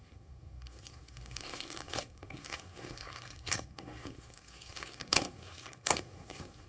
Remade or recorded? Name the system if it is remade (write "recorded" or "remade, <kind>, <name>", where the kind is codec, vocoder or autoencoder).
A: remade, codec, SNAC